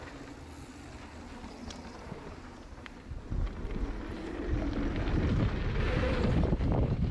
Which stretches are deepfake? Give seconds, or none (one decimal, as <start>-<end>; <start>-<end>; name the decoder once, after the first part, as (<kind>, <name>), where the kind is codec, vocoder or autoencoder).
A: 1.6-3.2 (vocoder, BigVGAN v2)

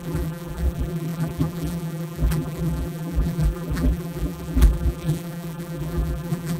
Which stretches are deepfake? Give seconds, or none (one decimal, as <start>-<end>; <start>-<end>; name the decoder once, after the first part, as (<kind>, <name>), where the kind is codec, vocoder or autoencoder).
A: 0.0-6.6 (vocoder, BigVGAN v2)

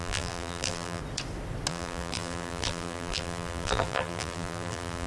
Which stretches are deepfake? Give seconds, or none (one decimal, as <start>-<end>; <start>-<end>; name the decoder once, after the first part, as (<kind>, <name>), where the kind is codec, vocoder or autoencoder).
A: 0.0-1.0 (vocoder, BigVGAN v2); 1.7-5.1